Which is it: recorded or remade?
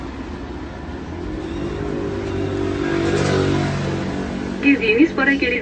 recorded